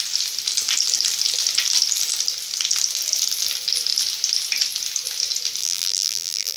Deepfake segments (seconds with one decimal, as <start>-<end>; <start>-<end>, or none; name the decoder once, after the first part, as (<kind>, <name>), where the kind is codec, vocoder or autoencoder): 5.6-6.6 (vocoder, BigVGAN v2)